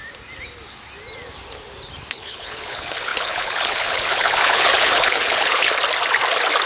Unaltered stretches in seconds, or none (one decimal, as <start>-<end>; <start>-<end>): 0.0-2.1; 5.7-6.7